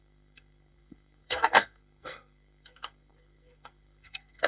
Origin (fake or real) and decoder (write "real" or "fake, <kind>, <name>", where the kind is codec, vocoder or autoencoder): fake, codec, SNAC